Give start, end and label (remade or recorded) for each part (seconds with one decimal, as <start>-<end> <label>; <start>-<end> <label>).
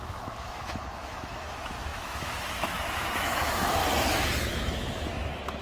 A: 0.0-3.8 remade; 3.8-4.4 recorded; 4.4-5.6 remade